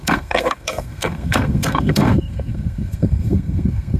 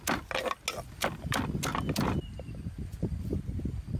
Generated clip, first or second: first